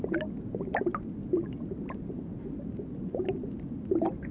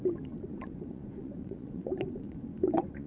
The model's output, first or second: second